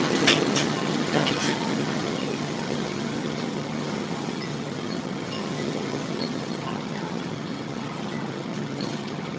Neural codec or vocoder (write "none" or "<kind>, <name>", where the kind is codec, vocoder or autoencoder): vocoder, HiFi-GAN